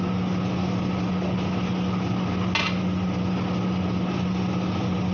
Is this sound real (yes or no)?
yes